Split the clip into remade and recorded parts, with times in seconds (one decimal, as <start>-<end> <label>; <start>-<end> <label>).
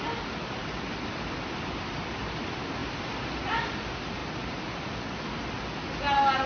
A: 0.0-2.8 recorded; 2.8-3.5 remade; 3.5-6.5 recorded